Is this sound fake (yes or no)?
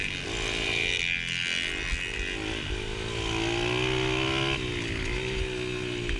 no